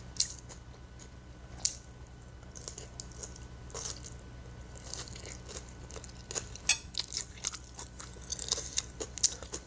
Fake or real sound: real